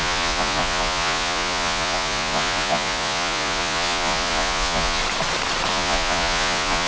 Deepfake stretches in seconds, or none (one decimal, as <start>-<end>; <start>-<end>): 0.0-5.0; 5.7-6.9